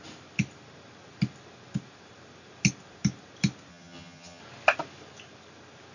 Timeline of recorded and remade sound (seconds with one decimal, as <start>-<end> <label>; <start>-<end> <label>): 0.0-3.7 recorded; 3.7-4.4 remade; 4.4-5.9 recorded